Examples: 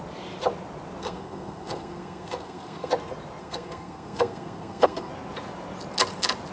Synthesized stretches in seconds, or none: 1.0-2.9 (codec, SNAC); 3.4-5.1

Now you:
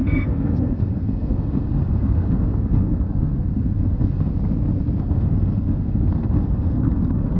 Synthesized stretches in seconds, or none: 0.0-4.3 (codec, SNAC); 5.0-7.4

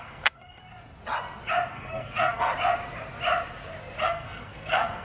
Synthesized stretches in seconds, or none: 0.0-0.6 (codec, SNAC); 1.7-2.5; 4.0-5.0

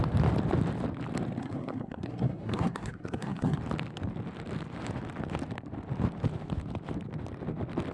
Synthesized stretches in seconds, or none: 1.4-3.6 (codec, SNAC)

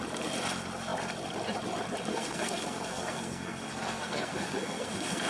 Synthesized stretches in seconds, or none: 2.1-5.3 (codec, SNAC)

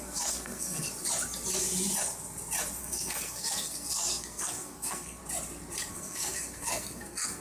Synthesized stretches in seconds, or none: 0.0-0.9 (codec, SNAC); 2.8-5.2; 5.9-7.4